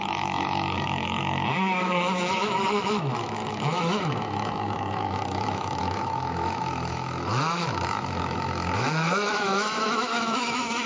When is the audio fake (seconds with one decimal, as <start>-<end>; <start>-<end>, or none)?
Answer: 0.0-10.9

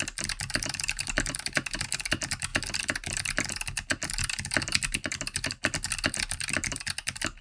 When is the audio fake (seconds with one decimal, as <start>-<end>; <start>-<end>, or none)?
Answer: none

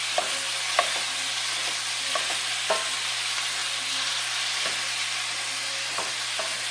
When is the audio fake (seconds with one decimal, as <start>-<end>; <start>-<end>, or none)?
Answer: none

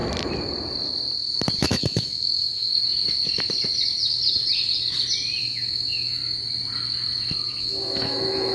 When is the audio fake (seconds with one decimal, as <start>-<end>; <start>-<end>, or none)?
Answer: 1.6-2.7; 5.4-6.2; 7.6-8.5

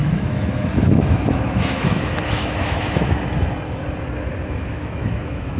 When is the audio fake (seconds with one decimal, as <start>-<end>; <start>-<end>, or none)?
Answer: 0.0-3.2; 4.3-5.6

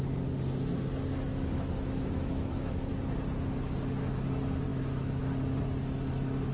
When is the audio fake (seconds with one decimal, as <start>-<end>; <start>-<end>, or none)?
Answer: 1.3-2.9; 4.7-5.2